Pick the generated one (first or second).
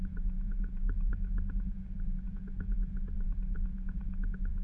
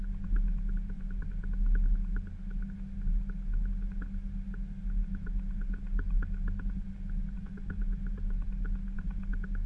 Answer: first